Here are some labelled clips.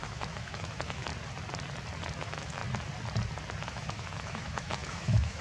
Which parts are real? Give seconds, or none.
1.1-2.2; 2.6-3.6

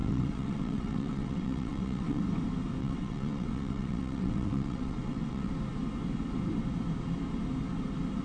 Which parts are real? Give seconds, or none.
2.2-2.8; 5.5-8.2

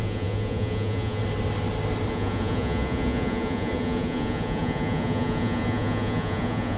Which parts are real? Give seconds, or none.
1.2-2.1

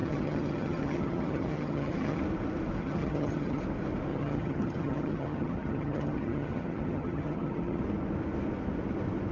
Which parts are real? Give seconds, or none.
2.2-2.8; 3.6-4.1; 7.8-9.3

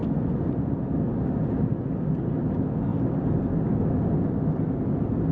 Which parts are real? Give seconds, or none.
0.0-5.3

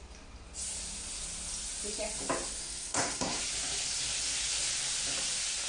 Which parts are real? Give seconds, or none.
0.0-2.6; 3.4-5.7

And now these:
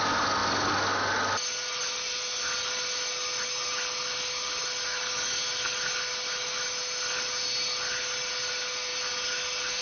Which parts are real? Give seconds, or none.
0.0-9.8